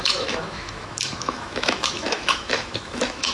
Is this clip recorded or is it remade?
remade